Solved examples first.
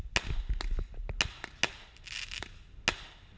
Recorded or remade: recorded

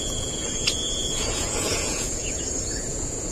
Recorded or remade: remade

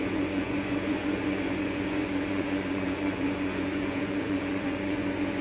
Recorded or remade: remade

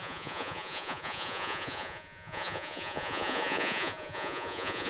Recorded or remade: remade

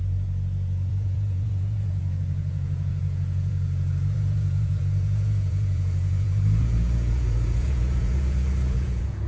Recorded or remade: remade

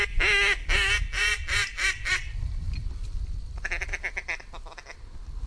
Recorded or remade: recorded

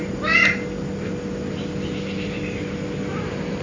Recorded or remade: recorded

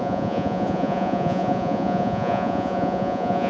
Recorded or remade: remade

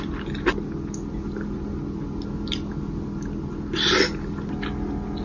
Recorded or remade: recorded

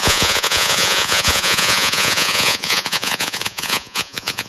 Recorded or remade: remade